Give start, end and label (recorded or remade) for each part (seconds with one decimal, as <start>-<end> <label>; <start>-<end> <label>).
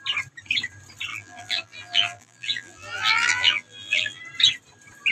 0.0-1.1 recorded; 1.1-4.2 remade; 4.2-5.1 recorded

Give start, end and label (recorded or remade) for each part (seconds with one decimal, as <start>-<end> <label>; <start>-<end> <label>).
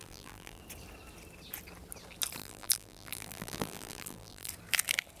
0.0-0.6 remade; 0.6-2.4 recorded; 2.4-4.5 remade; 4.5-5.2 recorded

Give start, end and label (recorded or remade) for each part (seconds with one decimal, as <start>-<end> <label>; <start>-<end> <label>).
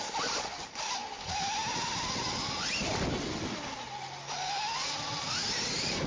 0.0-6.1 recorded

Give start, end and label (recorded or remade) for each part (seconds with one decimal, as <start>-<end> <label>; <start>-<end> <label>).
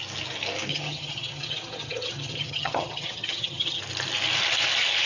0.0-0.7 recorded; 0.7-3.8 remade; 3.8-5.1 recorded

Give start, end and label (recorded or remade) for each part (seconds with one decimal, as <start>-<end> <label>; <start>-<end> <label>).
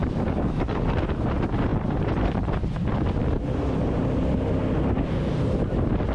0.0-0.9 remade; 0.9-6.1 recorded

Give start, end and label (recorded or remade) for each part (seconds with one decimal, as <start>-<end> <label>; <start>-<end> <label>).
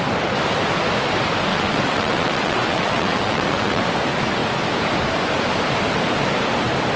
0.0-1.5 recorded; 1.5-3.8 remade; 3.8-7.0 recorded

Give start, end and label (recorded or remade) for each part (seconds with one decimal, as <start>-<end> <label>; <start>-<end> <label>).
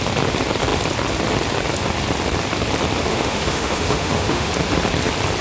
0.0-3.1 recorded; 3.1-4.5 remade; 4.5-5.4 recorded